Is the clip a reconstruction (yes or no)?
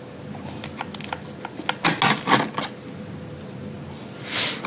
no